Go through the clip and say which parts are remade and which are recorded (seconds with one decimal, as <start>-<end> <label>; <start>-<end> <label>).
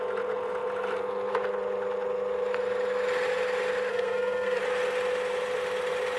0.0-3.9 recorded; 3.9-4.6 remade; 4.6-6.2 recorded